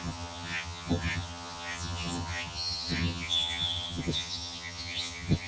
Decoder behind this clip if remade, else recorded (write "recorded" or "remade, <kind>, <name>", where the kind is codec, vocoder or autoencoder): remade, vocoder, HiFi-GAN